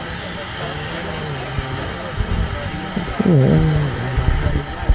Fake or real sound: real